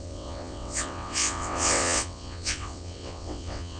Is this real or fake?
fake